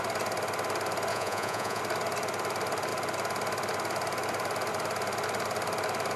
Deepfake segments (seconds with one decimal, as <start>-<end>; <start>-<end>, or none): 1.1-1.8